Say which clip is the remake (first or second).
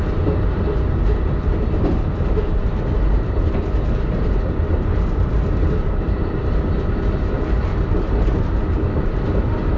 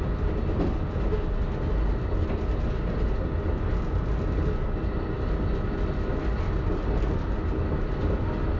first